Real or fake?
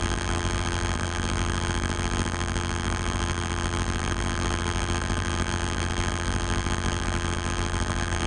fake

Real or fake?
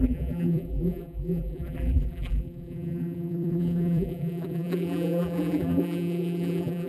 fake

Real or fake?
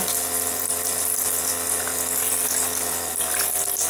real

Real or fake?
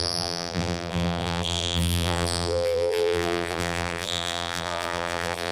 fake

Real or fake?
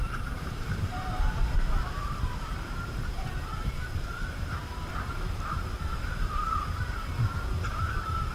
fake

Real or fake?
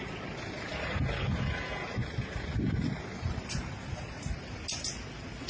real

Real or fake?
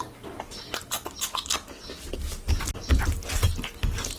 real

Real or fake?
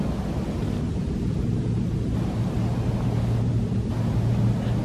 real